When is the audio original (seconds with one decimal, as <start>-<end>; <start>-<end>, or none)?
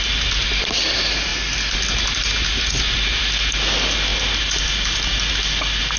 0.0-6.0